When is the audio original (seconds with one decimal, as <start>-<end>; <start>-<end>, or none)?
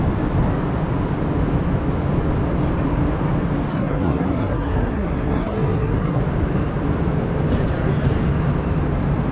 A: 0.0-3.7; 6.2-9.3